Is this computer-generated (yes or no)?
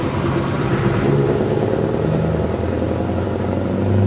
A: yes